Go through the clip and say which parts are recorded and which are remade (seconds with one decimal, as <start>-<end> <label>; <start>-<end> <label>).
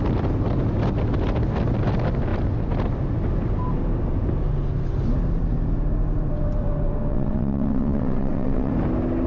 0.0-7.1 recorded; 7.1-8.7 remade; 8.7-9.3 recorded